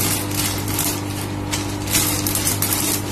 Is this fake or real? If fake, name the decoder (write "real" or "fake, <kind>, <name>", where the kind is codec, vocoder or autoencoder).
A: real